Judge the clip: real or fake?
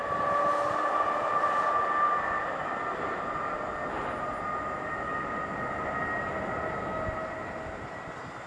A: real